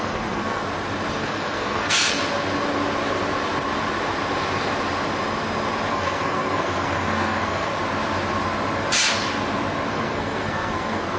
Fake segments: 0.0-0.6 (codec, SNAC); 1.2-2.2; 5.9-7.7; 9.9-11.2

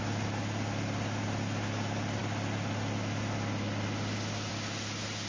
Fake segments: none

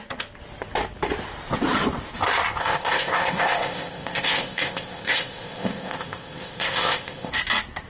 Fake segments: 2.6-7.3 (codec, ZipCodec)

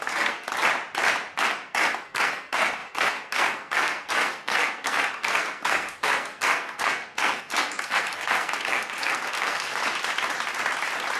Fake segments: 0.0-0.5 (codec, SNAC); 1.4-9.8

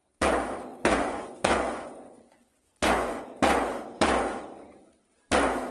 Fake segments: 0.7-3.2 (vocoder, Vocos)

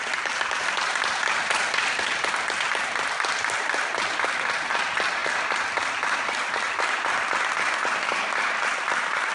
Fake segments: none

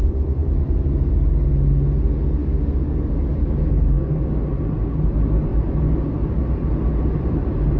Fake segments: 2.4-4.4 (codec, DAC)

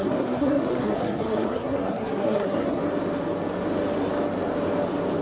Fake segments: 0.0-2.8 (codec, SNAC)